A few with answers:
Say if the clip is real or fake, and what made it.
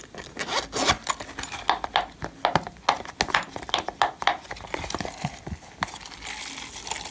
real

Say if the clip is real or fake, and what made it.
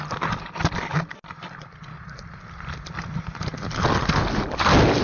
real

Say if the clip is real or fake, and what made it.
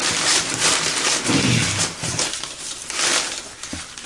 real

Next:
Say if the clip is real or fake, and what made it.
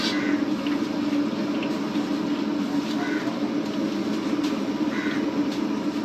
real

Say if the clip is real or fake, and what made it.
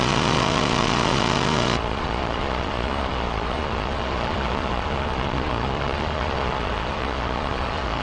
fake, vocoder, Vocos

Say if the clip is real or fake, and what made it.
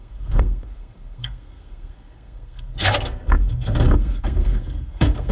fake, codec, SNAC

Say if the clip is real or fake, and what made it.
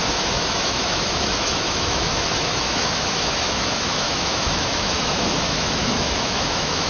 fake, autoencoder, DAC-VAE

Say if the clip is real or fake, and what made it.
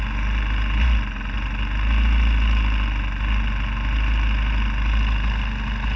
real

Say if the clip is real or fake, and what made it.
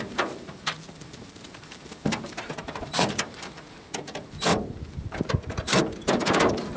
fake, vocoder, BigVGAN v2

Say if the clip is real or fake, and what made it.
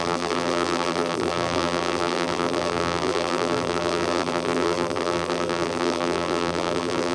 fake, vocoder, BigVGAN v2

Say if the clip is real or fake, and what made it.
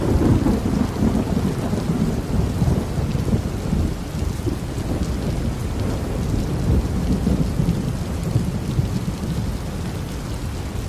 real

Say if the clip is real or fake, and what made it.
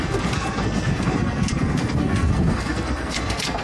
fake, codec, SNAC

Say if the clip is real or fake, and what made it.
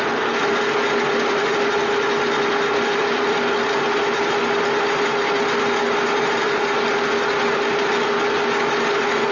real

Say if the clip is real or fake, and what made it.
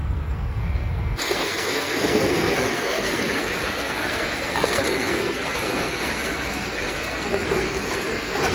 fake, codec, SNAC